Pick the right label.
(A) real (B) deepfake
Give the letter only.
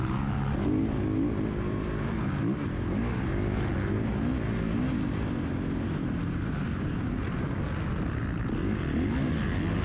A